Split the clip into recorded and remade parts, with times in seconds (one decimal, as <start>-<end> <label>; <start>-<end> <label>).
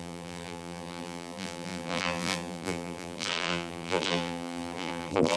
0.0-5.4 remade